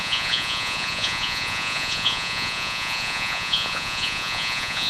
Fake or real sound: fake